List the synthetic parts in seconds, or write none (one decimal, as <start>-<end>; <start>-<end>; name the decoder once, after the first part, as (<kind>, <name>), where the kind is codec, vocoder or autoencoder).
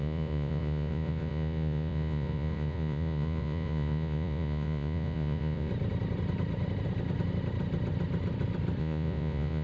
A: 0.0-5.7 (vocoder, Vocos); 8.8-9.6